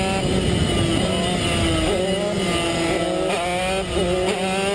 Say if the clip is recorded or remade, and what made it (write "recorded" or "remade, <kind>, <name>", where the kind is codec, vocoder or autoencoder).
recorded